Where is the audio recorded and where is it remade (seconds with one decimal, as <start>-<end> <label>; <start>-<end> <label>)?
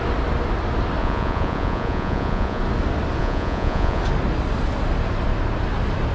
0.0-1.0 recorded; 1.0-2.6 remade; 2.6-3.2 recorded; 3.2-4.0 remade; 4.0-6.1 recorded